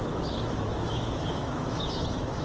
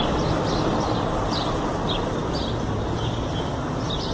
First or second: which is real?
second